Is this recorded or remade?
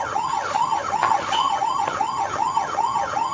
remade